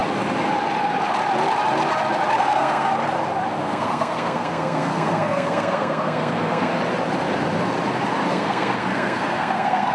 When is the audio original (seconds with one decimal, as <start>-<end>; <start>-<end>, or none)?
0.0-2.4; 2.9-3.6; 6.7-8.3